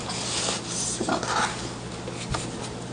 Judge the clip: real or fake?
real